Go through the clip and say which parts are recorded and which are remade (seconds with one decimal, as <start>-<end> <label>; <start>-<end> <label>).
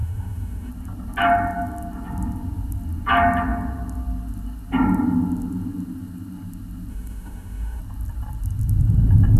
0.0-0.7 remade; 0.7-6.9 recorded; 6.9-7.8 remade; 7.8-9.4 recorded